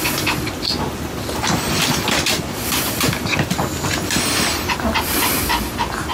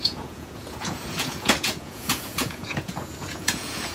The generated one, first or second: second